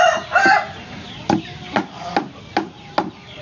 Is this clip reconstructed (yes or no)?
no